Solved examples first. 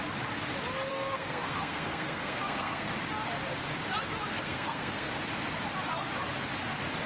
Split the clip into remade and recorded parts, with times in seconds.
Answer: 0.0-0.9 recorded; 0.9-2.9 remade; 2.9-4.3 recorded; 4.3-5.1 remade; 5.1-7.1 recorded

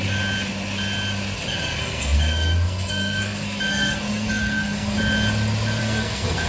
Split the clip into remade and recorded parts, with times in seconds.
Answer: 0.0-1.5 recorded; 1.5-5.0 remade; 5.0-5.8 recorded; 5.8-6.5 remade

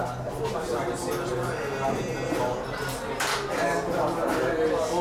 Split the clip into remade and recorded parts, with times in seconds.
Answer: 0.0-5.0 recorded